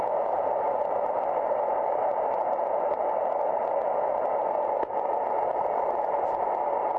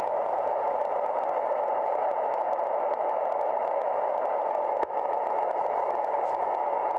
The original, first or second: first